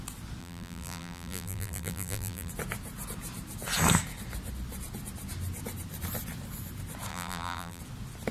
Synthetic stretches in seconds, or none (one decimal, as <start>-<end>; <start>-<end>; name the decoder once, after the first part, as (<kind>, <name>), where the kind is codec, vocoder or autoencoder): 0.4-2.5 (vocoder, BigVGAN v2); 7.1-7.8